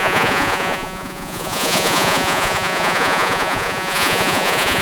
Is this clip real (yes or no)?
no